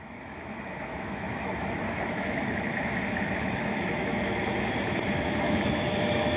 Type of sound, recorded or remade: remade